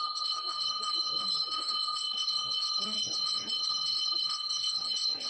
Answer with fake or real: fake